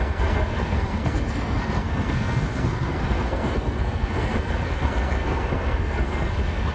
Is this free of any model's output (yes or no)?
no